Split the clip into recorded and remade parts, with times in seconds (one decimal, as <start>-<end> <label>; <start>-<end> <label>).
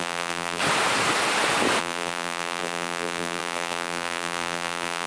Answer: 0.0-0.6 remade; 0.6-1.8 recorded; 1.8-5.1 remade